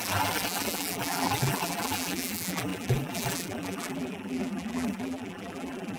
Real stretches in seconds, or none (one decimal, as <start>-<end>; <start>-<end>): none